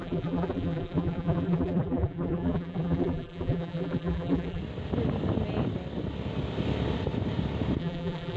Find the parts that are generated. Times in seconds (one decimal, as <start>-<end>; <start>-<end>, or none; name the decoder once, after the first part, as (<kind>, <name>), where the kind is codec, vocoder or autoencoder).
0.0-4.6 (vocoder, BigVGAN v2); 7.8-8.4